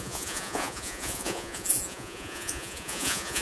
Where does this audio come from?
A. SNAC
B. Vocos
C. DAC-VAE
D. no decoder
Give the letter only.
B